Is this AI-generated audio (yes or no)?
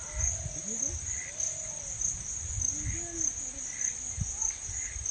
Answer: no